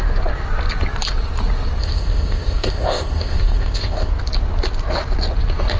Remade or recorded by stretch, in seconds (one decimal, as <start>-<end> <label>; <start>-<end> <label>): 0.0-1.8 recorded; 1.8-4.1 remade; 4.1-5.8 recorded